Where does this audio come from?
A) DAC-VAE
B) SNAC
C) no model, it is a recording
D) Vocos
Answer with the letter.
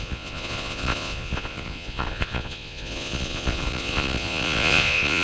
D